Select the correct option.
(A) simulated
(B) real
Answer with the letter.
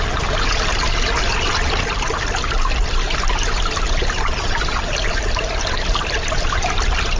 B